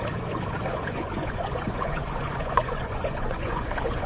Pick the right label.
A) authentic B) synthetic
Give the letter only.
B